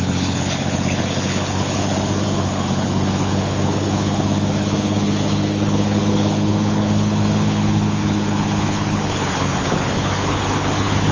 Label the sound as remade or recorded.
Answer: remade